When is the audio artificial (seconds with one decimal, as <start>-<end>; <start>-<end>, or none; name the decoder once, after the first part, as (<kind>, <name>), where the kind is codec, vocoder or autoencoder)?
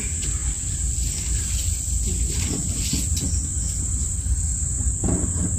none